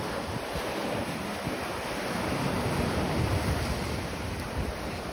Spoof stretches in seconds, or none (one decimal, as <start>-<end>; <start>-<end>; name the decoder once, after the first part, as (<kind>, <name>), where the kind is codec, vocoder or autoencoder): none